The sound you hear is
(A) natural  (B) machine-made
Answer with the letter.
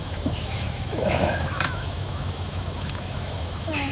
B